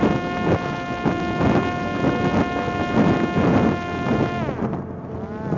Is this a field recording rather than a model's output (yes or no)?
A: yes